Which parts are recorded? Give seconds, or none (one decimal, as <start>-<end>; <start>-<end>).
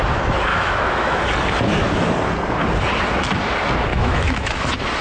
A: 0.0-0.5; 1.2-3.9; 4.5-5.0